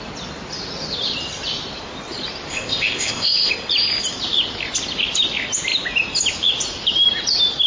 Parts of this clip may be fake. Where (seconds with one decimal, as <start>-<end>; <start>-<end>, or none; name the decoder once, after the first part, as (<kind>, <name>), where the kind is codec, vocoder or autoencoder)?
2.5-3.5 (codec, ZipCodec)